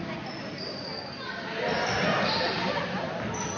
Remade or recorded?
recorded